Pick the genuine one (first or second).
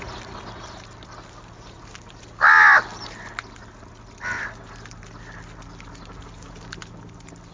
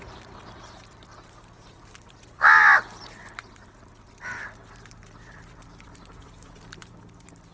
first